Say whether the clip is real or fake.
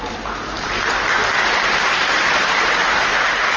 fake